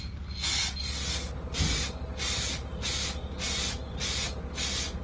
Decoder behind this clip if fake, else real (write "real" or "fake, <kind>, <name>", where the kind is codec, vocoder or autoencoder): real